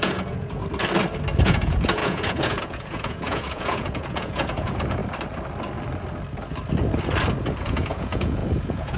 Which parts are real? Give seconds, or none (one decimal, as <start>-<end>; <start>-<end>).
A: 0.6-1.4; 5.0-7.6